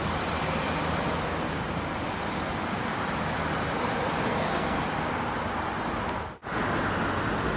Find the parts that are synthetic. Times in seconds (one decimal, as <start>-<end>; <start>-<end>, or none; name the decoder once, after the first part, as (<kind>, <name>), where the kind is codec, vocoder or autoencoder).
4.3-4.8 (codec, SNAC)

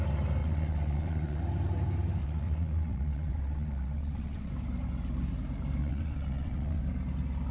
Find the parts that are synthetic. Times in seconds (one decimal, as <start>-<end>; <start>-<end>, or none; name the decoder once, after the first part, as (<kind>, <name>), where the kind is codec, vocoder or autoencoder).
0.4-1.4 (vocoder, WaveNeXt); 2.2-4.5; 5.8-6.8

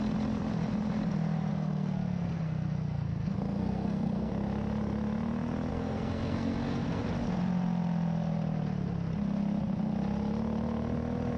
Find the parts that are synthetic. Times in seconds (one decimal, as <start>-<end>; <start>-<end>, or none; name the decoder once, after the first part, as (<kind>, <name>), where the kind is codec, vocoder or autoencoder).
1.5-4.3 (codec, SNAC); 5.7-7.0

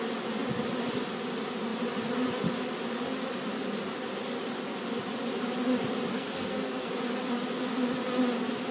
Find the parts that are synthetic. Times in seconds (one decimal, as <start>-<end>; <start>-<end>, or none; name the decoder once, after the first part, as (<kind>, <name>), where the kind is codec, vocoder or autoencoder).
6.1-6.9 (codec, SNAC)